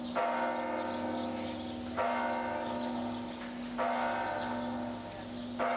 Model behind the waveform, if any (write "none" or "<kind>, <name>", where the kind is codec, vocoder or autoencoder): none